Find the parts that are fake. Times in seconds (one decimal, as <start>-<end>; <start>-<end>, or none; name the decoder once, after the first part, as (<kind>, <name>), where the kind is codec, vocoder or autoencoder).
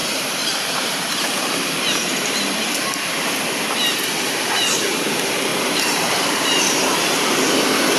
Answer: 0.0-3.6 (vocoder, BigVGAN v2); 5.5-6.7